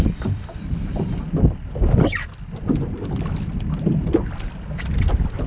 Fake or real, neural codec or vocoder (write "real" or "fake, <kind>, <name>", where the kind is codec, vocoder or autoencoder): real